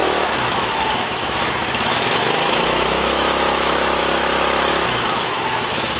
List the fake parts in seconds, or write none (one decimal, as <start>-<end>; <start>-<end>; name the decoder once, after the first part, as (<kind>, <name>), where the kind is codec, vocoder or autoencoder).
0.0-4.0 (autoencoder, DAC-VAE); 4.7-6.0